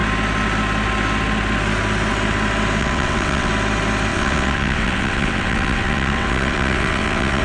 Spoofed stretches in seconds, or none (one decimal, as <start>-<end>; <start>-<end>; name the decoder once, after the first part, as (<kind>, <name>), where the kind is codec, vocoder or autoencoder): 2.8-3.5 (vocoder, WaveNeXt); 4.1-7.4